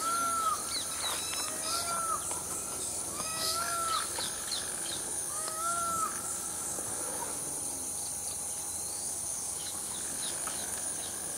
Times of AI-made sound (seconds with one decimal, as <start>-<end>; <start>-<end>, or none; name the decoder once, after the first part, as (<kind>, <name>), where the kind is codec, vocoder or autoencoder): 0.0-0.6 (codec, DAC); 2.8-7.4; 8.9-11.4